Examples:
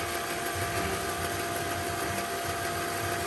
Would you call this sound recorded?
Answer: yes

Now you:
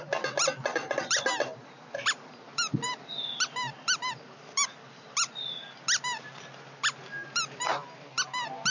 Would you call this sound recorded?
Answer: yes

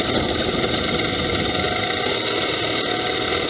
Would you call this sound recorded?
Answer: yes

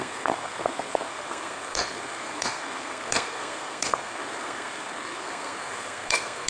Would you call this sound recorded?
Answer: no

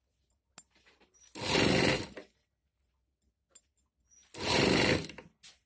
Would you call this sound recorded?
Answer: yes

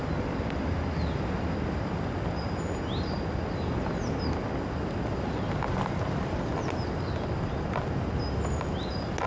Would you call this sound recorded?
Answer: yes